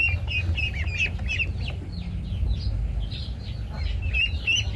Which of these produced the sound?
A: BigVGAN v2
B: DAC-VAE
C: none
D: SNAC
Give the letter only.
C